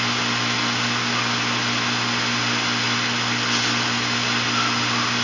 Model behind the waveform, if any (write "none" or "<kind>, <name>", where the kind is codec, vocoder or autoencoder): none